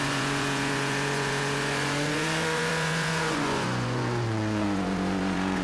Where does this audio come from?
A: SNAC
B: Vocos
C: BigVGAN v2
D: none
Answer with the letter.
B